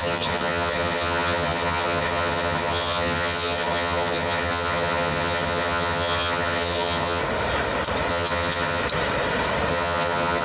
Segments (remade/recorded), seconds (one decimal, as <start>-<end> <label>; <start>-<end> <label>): 0.0-7.2 remade; 7.2-8.1 recorded; 8.1-8.8 remade; 8.8-9.7 recorded; 9.7-10.4 remade